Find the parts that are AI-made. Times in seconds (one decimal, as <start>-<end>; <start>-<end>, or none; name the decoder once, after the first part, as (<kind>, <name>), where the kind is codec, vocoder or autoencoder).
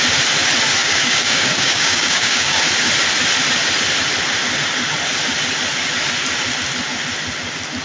0.8-2.6 (codec, DAC)